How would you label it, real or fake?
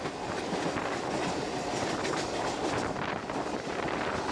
real